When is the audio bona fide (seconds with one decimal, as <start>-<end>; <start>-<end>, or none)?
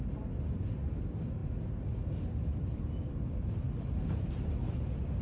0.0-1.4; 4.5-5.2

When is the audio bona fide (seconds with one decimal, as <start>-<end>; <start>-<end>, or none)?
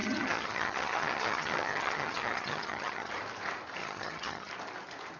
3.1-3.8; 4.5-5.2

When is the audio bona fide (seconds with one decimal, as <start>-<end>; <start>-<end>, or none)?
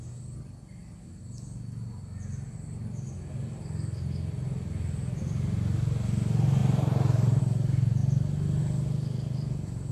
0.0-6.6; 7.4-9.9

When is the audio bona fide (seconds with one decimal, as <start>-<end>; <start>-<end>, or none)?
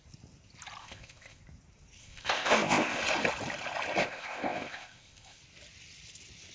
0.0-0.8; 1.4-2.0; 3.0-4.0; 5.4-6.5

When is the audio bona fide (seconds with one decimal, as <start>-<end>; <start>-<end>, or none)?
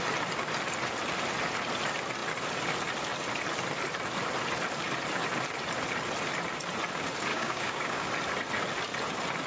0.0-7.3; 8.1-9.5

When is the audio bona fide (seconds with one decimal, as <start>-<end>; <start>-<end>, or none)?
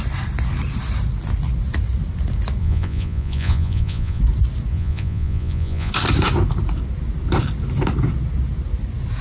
0.0-2.6; 4.2-4.7; 5.9-9.2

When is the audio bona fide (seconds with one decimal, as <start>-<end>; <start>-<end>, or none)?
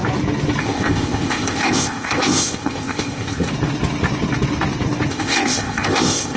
0.0-0.6; 3.5-5.1